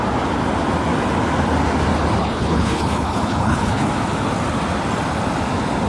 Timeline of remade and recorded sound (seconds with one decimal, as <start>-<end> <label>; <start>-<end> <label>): 0.0-2.2 recorded; 2.2-3.9 remade; 3.9-5.9 recorded